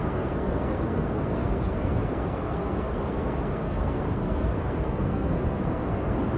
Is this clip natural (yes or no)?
no